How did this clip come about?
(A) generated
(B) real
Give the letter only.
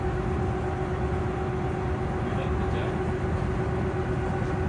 B